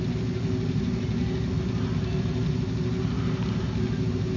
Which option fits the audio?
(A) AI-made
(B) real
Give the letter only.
B